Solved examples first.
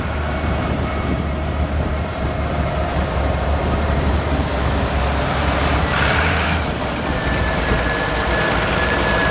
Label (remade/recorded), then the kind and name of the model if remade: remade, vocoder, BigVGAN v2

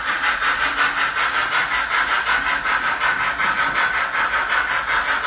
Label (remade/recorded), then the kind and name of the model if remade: recorded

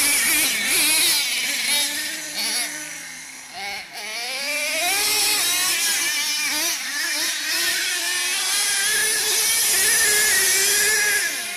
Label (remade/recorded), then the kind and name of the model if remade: recorded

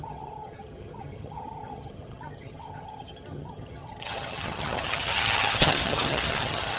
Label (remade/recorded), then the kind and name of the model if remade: remade, vocoder, HiFi-GAN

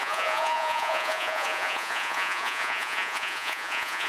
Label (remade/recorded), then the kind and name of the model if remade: remade, vocoder, Vocos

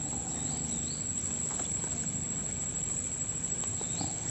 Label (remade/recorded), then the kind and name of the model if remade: recorded